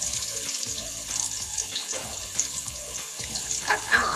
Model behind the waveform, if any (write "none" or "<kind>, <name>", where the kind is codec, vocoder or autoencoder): codec, HILCodec